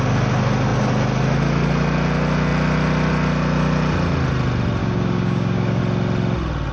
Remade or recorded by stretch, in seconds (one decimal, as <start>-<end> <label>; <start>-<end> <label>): 0.0-4.8 recorded; 4.8-5.8 remade; 5.8-6.7 recorded